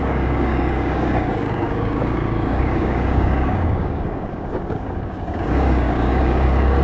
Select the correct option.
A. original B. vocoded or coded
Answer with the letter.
B